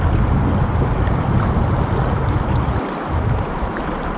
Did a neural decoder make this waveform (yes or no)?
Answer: no